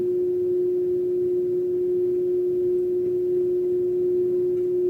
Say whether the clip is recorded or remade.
recorded